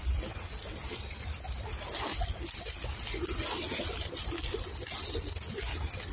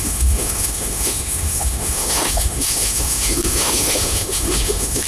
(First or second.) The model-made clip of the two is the second